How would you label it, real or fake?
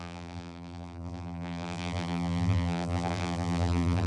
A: fake